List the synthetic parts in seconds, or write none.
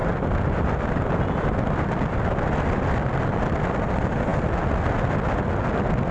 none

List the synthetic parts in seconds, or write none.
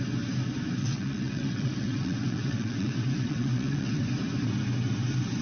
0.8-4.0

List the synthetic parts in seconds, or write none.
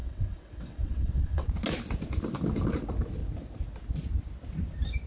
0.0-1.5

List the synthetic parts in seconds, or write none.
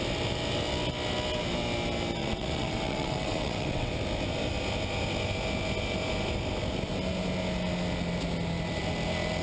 2.2-3.9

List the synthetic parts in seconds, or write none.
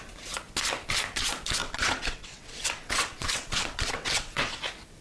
1.6-4.6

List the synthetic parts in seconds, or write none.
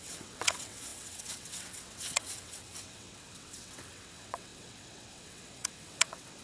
0.0-6.4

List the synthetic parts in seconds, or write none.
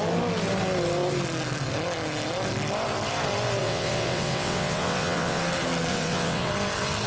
3.6-5.4; 5.9-6.5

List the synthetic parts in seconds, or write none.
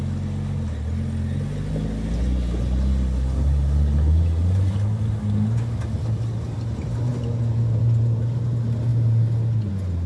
none